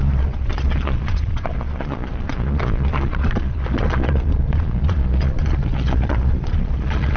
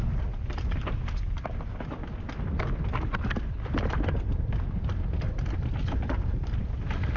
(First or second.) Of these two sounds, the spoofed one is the first